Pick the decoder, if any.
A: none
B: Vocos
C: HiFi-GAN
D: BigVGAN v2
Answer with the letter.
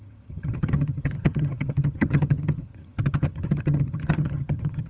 C